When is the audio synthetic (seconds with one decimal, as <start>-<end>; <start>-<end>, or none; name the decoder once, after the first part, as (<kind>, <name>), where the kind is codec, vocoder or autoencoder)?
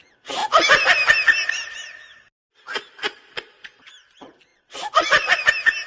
4.5-5.4 (vocoder, Vocos)